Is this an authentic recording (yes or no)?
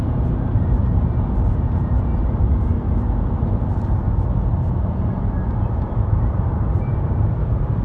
no